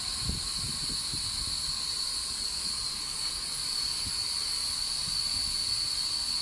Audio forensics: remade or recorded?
recorded